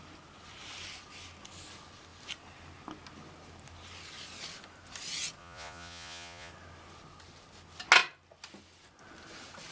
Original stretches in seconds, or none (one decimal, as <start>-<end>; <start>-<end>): 0.0-5.4; 6.5-9.7